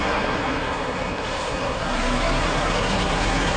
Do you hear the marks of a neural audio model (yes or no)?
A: yes